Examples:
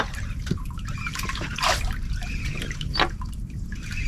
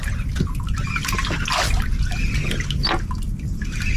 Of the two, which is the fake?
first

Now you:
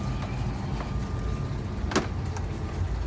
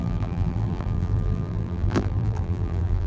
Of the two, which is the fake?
second